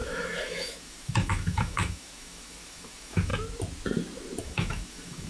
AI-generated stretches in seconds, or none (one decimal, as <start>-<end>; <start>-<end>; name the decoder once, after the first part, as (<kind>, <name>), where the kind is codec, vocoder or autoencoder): 0.0-3.3 (autoencoder, DAC-VAE); 4.4-5.3